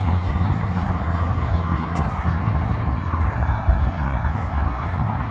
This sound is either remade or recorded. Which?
remade